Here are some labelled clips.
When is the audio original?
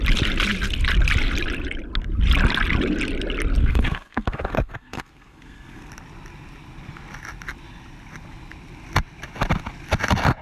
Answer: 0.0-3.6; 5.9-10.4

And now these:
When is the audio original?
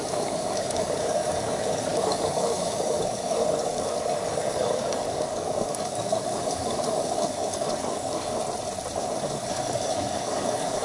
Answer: 8.4-9.0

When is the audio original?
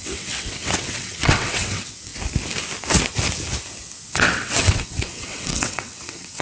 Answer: 2.1-4.1